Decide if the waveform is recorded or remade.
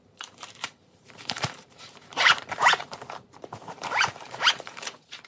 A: remade